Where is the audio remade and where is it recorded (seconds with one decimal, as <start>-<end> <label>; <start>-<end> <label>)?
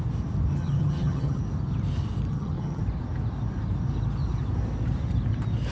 0.0-0.5 recorded; 0.5-1.4 remade; 1.4-2.3 recorded; 2.3-2.8 remade; 2.8-5.7 recorded